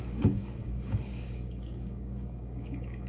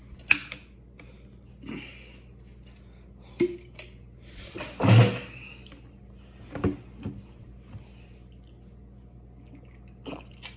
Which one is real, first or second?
second